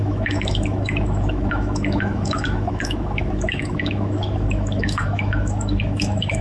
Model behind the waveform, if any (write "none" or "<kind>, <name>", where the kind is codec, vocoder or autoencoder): autoencoder, DAC-VAE